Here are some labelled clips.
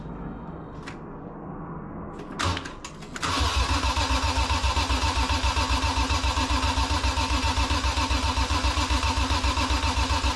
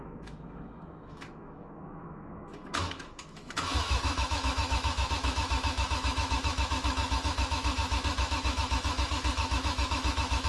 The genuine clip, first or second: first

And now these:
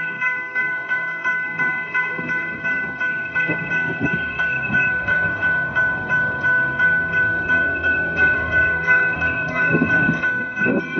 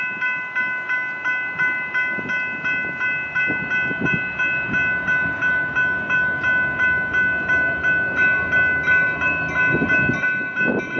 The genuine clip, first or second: second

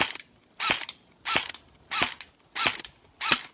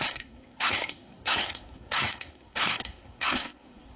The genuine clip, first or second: first